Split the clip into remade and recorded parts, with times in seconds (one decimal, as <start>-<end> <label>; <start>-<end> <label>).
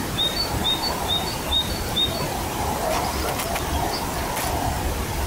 0.0-0.6 remade; 0.6-2.4 recorded; 2.4-3.0 remade; 3.0-5.3 recorded